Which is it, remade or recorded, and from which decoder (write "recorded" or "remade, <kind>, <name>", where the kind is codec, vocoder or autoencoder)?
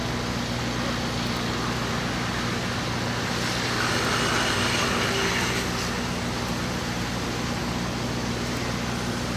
recorded